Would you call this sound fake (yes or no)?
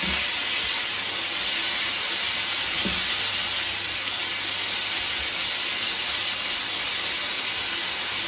no